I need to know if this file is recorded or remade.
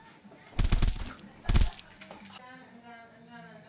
recorded